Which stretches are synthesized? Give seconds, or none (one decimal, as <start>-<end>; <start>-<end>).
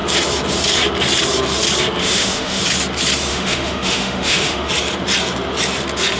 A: 2.0-2.6; 3.3-4.7